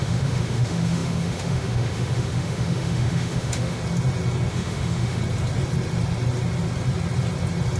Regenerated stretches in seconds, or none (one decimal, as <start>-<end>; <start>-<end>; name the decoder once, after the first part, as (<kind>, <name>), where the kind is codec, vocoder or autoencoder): 0.0-3.8 (autoencoder, DAC-VAE); 4.5-5.2